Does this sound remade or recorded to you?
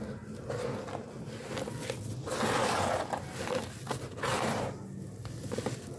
recorded